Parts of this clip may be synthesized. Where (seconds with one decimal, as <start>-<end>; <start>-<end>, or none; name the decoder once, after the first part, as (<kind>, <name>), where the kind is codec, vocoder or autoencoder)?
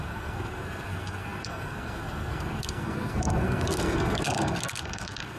0.0-5.4 (codec, SNAC)